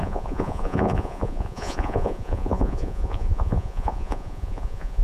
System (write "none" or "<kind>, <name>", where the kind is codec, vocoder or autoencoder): vocoder, Vocos